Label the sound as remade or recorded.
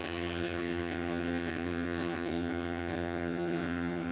remade